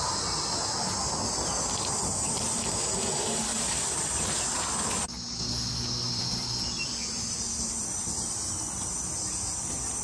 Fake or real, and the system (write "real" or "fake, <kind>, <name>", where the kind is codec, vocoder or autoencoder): real